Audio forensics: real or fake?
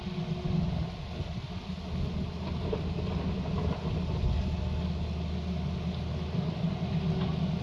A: real